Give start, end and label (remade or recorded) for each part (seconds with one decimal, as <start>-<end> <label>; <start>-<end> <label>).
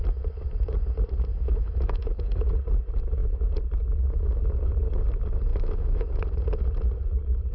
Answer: 0.0-1.3 recorded; 1.3-2.5 remade; 2.5-5.5 recorded; 5.5-6.2 remade; 6.2-7.5 recorded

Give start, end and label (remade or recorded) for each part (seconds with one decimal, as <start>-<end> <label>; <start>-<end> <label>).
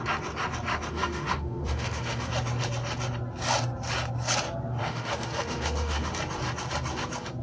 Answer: 0.0-0.9 recorded; 0.9-2.3 remade; 2.3-4.8 recorded; 4.8-6.1 remade; 6.1-7.4 recorded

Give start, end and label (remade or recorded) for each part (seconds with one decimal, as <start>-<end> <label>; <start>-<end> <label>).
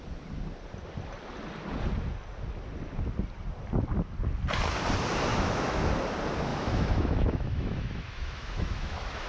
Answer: 0.0-5.3 recorded; 5.3-5.9 remade; 5.9-6.5 recorded; 6.5-9.3 remade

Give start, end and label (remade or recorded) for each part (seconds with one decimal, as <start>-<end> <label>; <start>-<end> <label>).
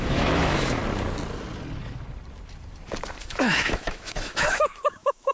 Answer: 0.0-0.8 remade; 0.8-3.2 recorded; 3.2-5.3 remade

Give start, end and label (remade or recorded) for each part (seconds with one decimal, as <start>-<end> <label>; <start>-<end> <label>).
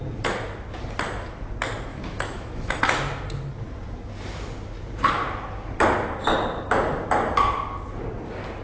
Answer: 0.0-1.9 recorded; 1.9-2.8 remade; 2.8-8.6 recorded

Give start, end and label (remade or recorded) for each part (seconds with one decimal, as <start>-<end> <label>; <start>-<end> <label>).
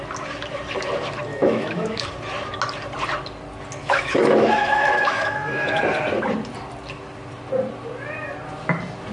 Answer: 0.0-1.3 recorded; 1.3-2.1 remade; 2.1-3.8 recorded; 3.8-5.8 remade; 5.8-9.1 recorded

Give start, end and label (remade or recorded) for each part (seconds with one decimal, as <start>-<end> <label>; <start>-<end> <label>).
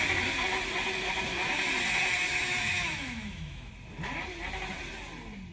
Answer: 0.0-2.3 recorded; 2.3-3.7 remade; 3.7-5.5 recorded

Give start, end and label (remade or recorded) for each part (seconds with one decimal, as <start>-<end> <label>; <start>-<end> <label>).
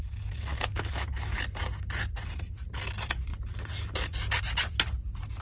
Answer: 0.0-0.5 recorded; 0.5-1.4 remade; 1.4-5.4 recorded